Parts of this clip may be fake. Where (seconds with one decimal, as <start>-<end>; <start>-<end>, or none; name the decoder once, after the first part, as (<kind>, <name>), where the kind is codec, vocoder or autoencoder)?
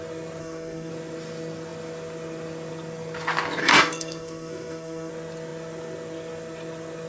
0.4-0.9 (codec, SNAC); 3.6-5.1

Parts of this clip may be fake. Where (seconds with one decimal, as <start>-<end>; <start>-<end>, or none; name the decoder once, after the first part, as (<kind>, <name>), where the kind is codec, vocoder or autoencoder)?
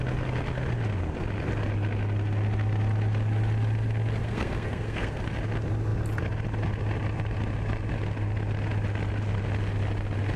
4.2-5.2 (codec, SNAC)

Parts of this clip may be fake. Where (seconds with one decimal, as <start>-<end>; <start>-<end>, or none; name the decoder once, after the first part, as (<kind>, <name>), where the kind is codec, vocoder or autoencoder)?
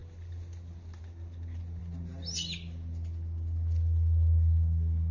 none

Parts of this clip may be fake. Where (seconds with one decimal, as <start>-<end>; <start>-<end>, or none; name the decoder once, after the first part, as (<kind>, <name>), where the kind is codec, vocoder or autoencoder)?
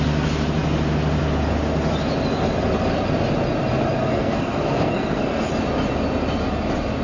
4.1-5.5 (codec, SNAC)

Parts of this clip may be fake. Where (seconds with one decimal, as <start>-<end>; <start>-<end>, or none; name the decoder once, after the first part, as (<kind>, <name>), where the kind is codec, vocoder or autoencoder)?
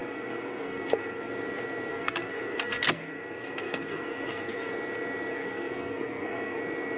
0.0-1.3 (codec, SNAC); 1.9-4.7; 5.3-6.6